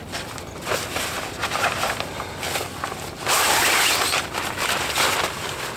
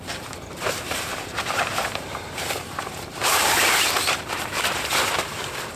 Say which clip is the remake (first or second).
second